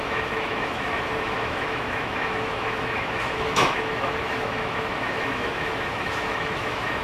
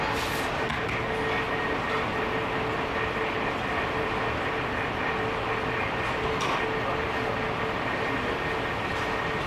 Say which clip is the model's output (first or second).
first